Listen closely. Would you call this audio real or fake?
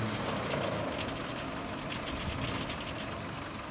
real